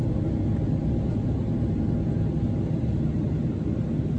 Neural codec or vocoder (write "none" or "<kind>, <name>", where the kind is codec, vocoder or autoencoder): none